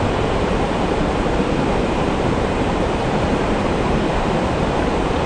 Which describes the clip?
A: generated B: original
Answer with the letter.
A